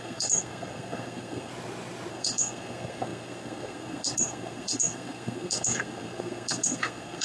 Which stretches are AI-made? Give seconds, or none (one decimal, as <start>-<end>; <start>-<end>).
0.0-1.5; 2.1-7.2